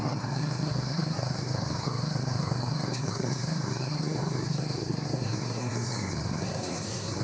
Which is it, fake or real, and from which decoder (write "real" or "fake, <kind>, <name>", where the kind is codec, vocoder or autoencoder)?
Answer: fake, codec, SNAC